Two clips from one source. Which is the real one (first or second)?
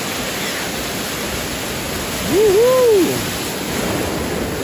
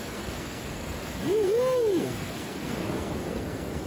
first